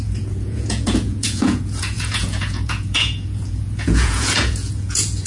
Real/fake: fake